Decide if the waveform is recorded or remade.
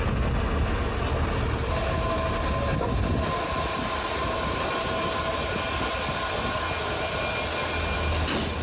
recorded